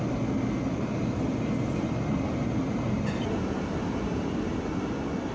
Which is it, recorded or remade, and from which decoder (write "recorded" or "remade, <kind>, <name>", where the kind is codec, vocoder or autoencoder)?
recorded